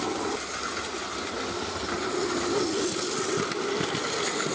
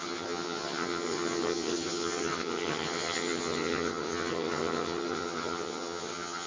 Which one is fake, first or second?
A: second